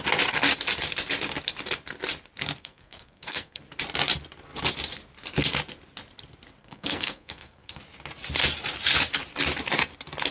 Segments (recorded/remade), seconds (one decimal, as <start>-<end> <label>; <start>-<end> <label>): 0.0-2.6 recorded; 2.6-3.6 remade; 3.6-6.6 recorded; 6.6-7.8 remade; 7.8-10.3 recorded